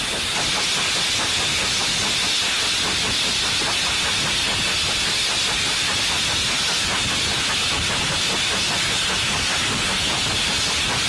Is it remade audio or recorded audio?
recorded